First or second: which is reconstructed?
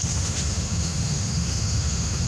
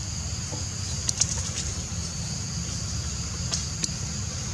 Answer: first